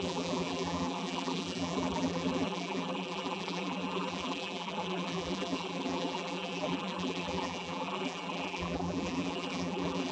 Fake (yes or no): yes